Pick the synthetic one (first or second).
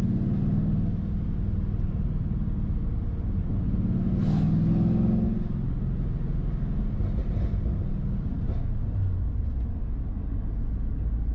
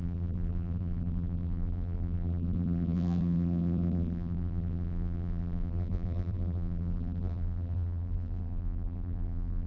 second